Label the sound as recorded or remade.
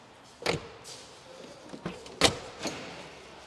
recorded